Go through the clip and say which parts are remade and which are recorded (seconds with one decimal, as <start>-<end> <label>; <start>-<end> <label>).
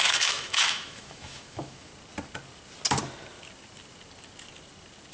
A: 0.0-1.9 remade; 1.9-5.1 recorded